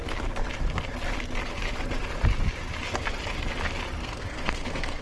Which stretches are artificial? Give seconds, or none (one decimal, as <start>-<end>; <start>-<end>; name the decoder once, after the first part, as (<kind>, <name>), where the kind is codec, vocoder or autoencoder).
4.0-5.0 (codec, SNAC)